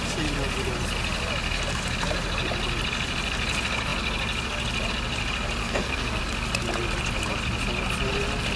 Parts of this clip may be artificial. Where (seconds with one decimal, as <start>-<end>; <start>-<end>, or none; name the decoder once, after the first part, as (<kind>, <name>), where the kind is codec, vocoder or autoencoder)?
5.6-6.2 (codec, SNAC)